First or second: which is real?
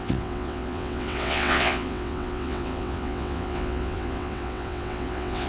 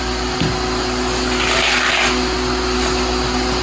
second